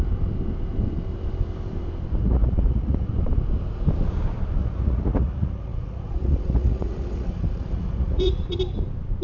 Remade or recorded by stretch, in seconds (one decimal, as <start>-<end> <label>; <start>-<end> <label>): 0.0-2.2 recorded; 2.2-3.1 remade; 3.1-4.6 recorded; 4.6-8.6 remade; 8.6-9.2 recorded